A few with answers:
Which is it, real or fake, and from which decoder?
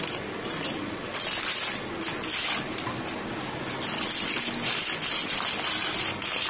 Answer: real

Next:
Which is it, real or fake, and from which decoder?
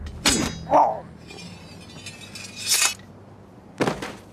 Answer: real